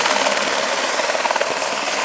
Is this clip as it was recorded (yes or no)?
yes